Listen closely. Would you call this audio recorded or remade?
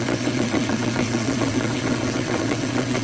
remade